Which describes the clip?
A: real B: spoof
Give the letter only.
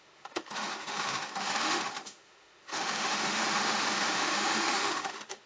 B